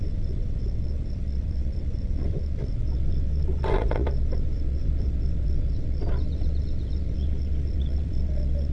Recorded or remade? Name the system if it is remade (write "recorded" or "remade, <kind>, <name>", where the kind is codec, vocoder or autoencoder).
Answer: remade, vocoder, WaveNeXt